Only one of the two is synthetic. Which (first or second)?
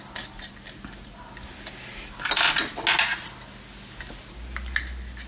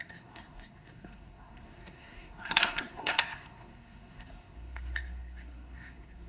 second